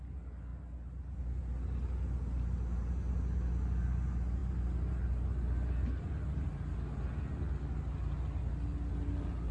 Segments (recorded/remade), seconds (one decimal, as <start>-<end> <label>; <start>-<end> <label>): 0.0-9.5 recorded